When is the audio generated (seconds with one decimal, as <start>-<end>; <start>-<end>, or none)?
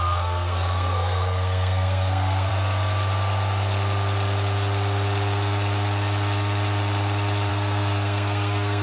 0.0-2.5; 7.5-8.8